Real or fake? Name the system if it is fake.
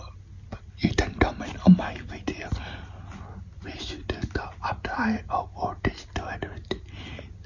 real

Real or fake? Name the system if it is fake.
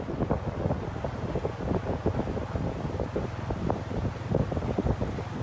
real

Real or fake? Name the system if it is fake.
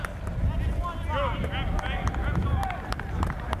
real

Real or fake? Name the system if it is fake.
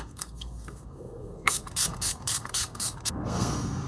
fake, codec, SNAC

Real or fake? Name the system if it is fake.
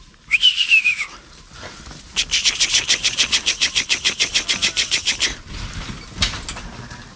real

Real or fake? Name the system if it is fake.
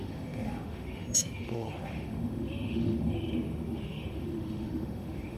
fake, autoencoder, DAC-VAE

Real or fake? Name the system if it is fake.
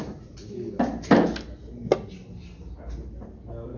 real